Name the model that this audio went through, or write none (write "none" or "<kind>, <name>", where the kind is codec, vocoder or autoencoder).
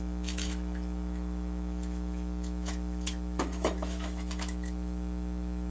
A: autoencoder, DAC-VAE